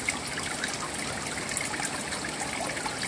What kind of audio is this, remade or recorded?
recorded